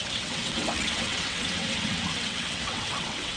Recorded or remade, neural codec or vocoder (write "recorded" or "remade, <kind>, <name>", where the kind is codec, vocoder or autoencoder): remade, vocoder, WaveNeXt